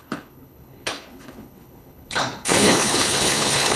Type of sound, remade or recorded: remade